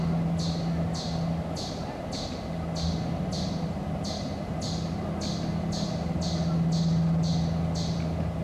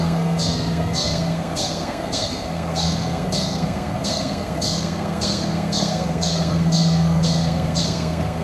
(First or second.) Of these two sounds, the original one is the first